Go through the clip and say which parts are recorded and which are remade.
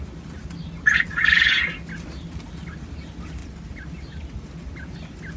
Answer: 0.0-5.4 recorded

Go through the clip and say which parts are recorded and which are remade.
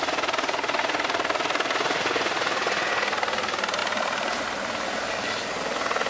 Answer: 0.0-6.1 recorded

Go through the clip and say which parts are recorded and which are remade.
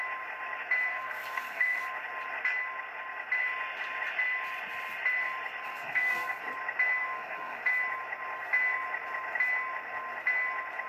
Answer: 0.0-0.9 recorded; 0.9-1.8 remade; 1.8-5.6 recorded; 5.6-6.4 remade; 6.4-7.0 recorded; 7.0-7.6 remade; 7.6-10.9 recorded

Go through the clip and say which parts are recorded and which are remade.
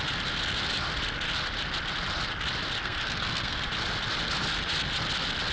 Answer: 0.0-2.8 recorded; 2.8-3.7 remade; 3.7-5.5 recorded